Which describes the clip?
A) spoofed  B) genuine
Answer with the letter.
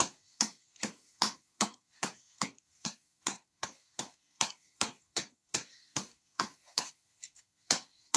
A